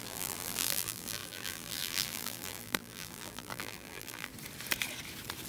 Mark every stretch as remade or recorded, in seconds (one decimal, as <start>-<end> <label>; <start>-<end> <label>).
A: 0.0-4.3 remade; 4.3-5.5 recorded

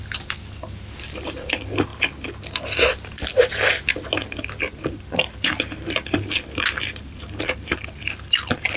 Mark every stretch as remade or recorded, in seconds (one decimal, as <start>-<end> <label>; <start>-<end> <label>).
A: 0.0-1.9 remade; 1.9-4.9 recorded; 4.9-8.8 remade

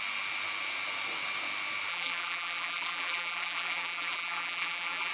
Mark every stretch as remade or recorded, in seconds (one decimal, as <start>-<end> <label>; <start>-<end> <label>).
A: 0.0-1.9 recorded; 1.9-5.1 remade

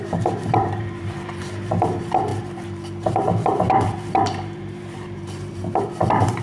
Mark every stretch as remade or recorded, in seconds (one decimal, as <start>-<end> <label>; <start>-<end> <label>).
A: 0.0-6.4 remade

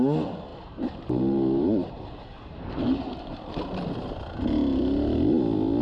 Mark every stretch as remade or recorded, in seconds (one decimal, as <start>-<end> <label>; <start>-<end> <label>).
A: 0.0-0.5 recorded; 0.5-3.8 remade; 3.8-5.8 recorded